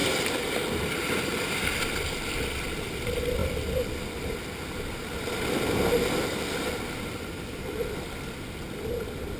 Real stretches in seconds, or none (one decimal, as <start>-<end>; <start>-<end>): 0.0-9.4

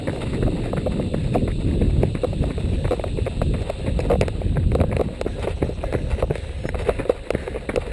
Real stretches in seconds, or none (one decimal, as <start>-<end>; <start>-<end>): 0.0-1.1; 1.8-2.3; 2.9-7.9

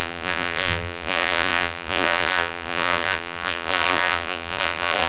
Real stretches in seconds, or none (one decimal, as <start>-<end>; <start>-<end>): none

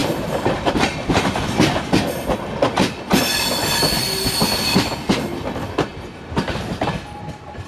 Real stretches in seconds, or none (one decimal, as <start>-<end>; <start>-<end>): 1.8-5.9; 6.9-7.7

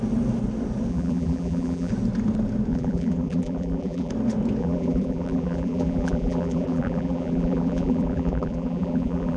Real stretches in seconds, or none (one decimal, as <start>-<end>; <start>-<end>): 0.0-0.9; 1.9-2.7; 4.1-4.6